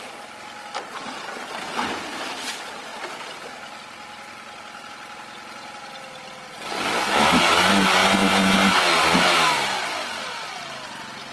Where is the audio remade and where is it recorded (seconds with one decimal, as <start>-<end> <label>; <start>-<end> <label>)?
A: 0.0-11.3 recorded